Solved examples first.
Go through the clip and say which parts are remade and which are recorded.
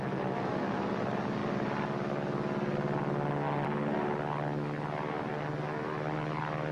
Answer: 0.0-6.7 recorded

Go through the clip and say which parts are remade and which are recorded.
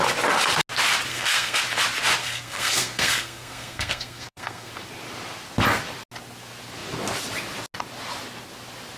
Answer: 0.0-1.1 recorded; 1.1-1.6 remade; 1.6-2.2 recorded; 2.2-4.7 remade; 4.7-9.0 recorded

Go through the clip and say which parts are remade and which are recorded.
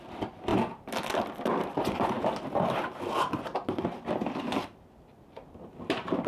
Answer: 0.0-6.3 recorded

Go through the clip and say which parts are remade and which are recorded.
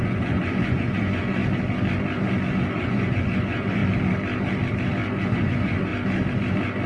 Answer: 0.0-1.4 remade; 1.4-2.7 recorded; 2.7-3.8 remade; 3.8-5.2 recorded; 5.2-5.9 remade; 5.9-6.9 recorded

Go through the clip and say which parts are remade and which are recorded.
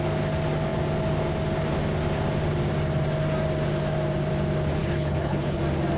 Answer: 0.0-4.8 recorded; 4.8-5.6 remade; 5.6-6.0 recorded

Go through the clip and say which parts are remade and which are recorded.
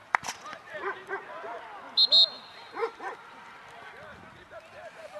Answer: 0.0-1.1 remade; 1.1-2.8 recorded; 2.8-3.6 remade; 3.6-4.1 recorded; 4.1-5.2 remade